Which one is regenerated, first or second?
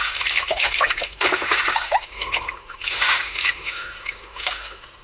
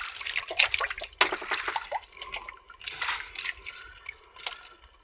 first